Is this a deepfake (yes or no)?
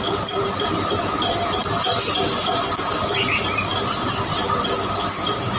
no